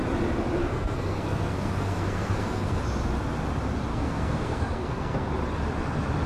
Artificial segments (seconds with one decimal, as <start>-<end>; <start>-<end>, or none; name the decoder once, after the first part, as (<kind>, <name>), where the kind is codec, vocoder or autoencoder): 0.6-2.8 (codec, SNAC); 3.9-5.3